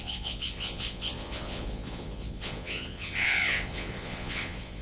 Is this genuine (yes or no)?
no